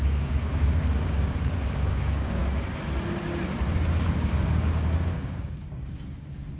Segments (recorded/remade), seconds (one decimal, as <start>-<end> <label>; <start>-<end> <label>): 0.0-2.4 remade; 2.4-4.0 recorded; 4.0-6.6 remade